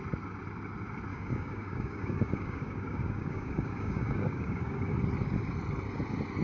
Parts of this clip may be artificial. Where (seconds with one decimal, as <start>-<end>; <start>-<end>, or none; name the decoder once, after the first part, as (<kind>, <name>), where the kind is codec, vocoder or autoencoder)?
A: 1.1-4.9 (codec, DAC)